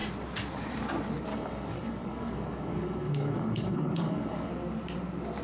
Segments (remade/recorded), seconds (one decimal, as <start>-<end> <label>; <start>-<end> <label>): 0.0-1.3 recorded; 1.3-4.5 remade; 4.5-5.4 recorded